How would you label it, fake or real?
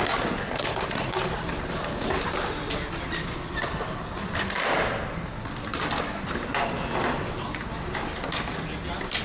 real